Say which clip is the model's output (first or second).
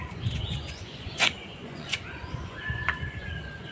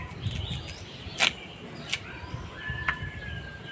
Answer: first